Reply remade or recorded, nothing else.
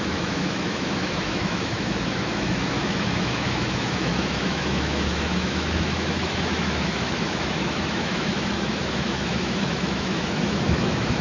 remade